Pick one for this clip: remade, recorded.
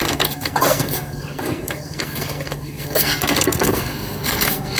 remade